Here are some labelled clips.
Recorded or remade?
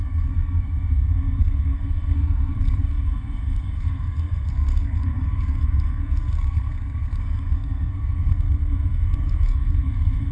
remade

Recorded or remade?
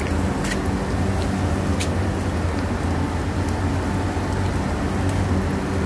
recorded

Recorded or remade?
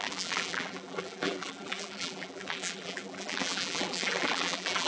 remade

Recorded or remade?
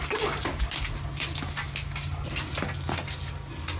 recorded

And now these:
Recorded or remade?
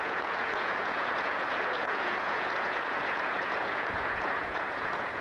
remade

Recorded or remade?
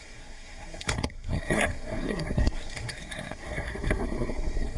remade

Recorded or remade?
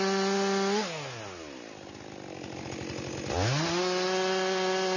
recorded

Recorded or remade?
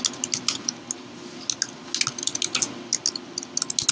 recorded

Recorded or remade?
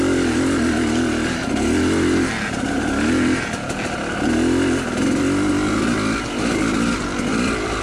recorded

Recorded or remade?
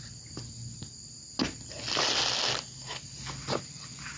recorded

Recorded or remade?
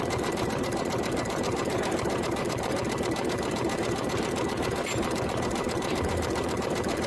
remade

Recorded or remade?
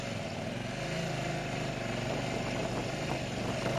recorded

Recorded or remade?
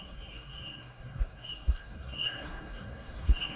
remade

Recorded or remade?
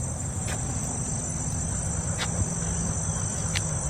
recorded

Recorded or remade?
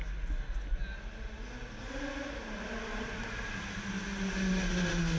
recorded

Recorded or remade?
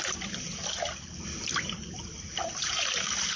recorded